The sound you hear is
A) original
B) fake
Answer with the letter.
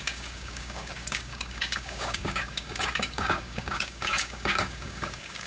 B